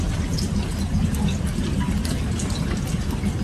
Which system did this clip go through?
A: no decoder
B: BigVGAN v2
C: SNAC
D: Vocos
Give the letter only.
A